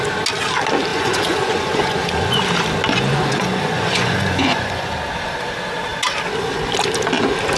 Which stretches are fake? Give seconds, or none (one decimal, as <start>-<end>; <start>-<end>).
0.9-2.4; 2.9-4.9